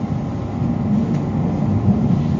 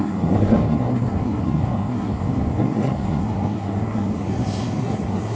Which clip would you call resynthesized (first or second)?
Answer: second